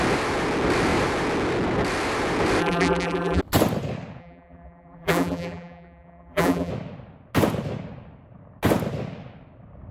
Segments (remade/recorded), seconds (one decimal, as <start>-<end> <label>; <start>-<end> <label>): 0.0-2.6 recorded; 2.6-3.4 remade; 3.4-4.2 recorded; 4.2-6.7 remade; 6.7-9.9 recorded